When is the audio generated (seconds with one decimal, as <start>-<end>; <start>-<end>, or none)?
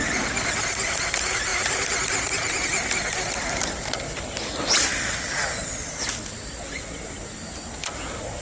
none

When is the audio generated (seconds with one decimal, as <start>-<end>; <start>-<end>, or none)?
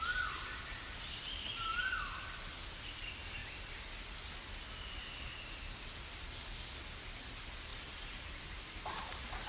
7.7-8.8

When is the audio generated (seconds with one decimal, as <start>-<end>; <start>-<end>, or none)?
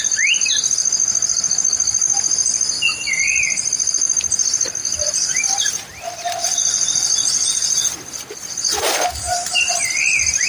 none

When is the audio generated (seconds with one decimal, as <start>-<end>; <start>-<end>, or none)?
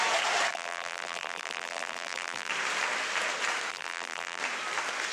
0.5-2.5; 3.7-4.4